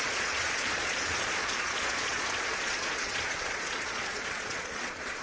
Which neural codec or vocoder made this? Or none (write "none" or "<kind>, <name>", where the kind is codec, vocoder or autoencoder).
vocoder, Vocos